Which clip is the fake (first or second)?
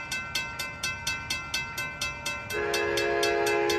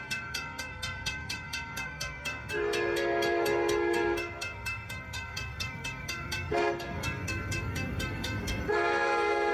second